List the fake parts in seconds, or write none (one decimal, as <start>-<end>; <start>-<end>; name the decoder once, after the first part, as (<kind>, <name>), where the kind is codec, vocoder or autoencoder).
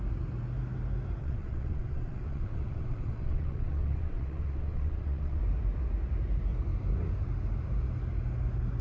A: 1.2-5.4 (vocoder, WaveNeXt)